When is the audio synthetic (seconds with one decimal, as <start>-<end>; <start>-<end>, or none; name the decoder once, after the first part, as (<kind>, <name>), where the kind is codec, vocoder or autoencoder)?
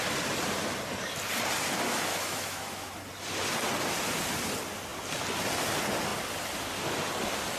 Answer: 2.1-2.9 (autoencoder, DAC-VAE)